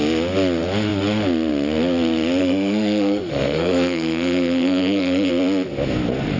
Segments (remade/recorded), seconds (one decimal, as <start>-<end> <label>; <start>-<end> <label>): 0.0-2.4 recorded; 2.4-5.3 remade; 5.3-6.4 recorded